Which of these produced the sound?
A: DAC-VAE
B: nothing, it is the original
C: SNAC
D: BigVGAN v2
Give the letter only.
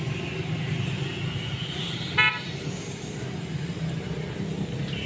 B